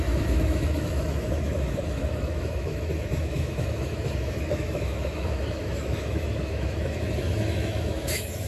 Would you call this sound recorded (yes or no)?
no